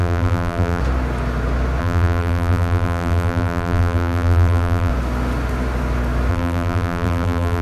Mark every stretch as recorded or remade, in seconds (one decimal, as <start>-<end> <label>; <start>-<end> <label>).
0.0-0.8 remade; 0.8-1.8 recorded; 1.8-4.9 remade; 4.9-6.3 recorded; 6.3-7.6 remade